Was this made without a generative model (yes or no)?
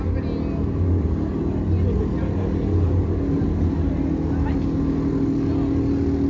yes